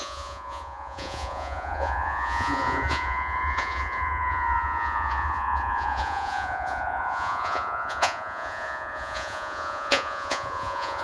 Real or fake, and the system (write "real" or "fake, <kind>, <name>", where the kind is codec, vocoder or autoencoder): fake, vocoder, Vocos